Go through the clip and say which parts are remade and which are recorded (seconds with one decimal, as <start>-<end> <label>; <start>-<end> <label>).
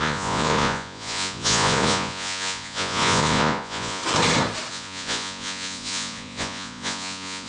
0.0-4.0 remade; 4.0-4.7 recorded; 4.7-7.5 remade